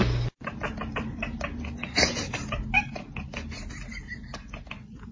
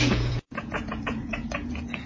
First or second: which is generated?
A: second